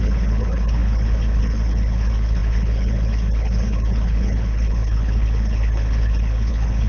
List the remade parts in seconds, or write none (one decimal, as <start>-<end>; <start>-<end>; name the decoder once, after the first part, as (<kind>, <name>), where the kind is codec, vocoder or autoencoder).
0.0-6.9 (codec, HILCodec)